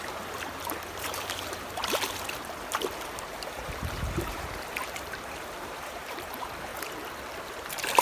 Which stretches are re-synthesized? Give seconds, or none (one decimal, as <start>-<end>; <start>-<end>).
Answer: 0.0-1.8; 3.2-6.7; 7.4-8.0